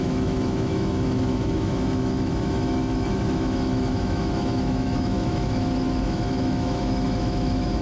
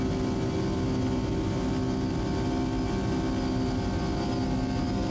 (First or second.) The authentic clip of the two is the second